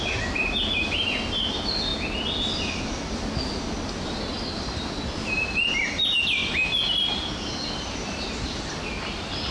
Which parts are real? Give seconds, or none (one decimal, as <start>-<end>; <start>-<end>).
0.0-9.5